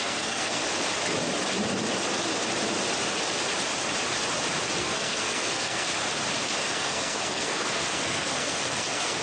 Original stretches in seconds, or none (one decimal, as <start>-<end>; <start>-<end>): 0.6-4.8; 5.9-6.6